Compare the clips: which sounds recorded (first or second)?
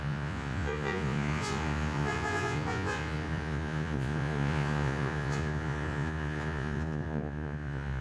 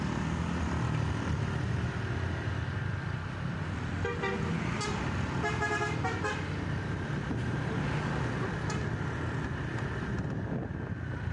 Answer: second